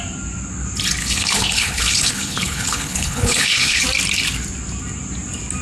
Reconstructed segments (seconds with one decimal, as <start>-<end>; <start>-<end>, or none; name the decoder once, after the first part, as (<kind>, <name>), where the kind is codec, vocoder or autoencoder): 1.0-3.8 (codec, HILCodec)